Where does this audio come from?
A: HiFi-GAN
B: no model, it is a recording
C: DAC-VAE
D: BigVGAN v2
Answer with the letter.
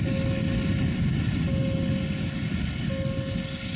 B